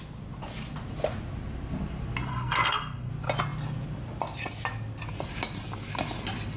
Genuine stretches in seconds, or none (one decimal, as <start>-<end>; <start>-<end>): 0.0-2.3; 3.1-6.6